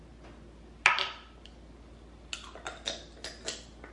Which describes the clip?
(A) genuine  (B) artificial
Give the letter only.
A